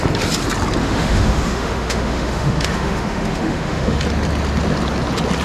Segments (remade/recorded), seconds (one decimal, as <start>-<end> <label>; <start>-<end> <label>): 0.0-0.8 recorded; 0.8-4.0 remade; 4.0-5.4 recorded